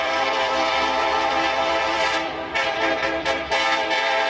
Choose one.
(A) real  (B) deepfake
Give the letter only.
B